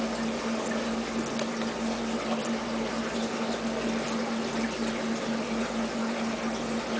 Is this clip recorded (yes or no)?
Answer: yes